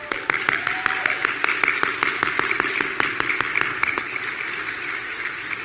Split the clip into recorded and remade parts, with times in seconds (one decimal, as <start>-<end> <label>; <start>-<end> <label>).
0.0-3.7 recorded; 3.7-4.2 remade; 4.2-5.6 recorded